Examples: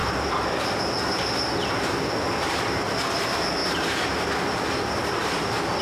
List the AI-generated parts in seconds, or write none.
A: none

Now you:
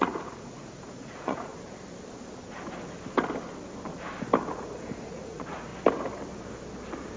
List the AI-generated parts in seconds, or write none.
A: 0.0-1.5 (vocoder, Vocos); 4.5-5.7

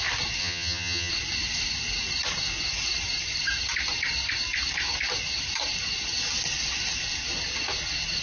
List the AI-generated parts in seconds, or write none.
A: 0.4-1.1 (vocoder, HiFi-GAN)

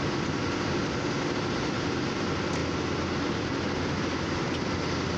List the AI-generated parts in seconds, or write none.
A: none

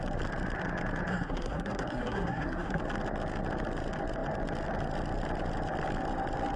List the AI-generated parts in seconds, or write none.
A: 1.1-2.8 (codec, SNAC)

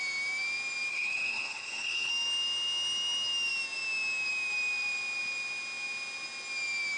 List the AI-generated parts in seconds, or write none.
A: 0.9-2.1 (codec, HILCodec)